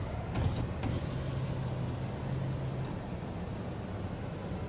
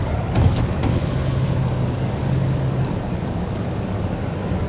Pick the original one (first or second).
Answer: first